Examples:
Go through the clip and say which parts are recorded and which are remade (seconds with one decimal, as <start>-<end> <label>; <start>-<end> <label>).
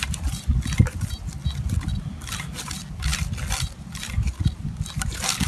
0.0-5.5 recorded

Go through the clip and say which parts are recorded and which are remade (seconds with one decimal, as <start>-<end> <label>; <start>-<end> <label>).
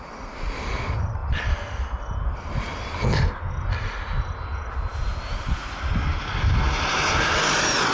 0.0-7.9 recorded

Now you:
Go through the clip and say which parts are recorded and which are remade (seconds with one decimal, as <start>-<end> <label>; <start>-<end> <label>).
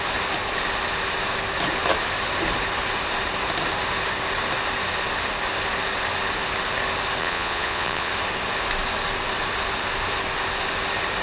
0.0-7.2 recorded; 7.2-8.1 remade; 8.1-11.2 recorded